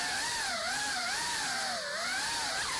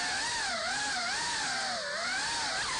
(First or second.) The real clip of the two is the second